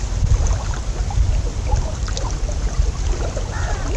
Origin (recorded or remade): remade